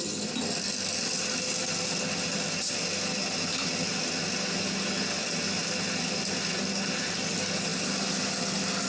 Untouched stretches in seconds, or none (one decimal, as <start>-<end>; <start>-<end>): 0.0-8.9